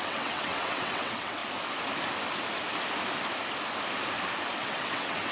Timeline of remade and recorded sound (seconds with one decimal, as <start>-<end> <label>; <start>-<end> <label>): 0.0-1.4 remade; 1.4-4.6 recorded; 4.6-5.3 remade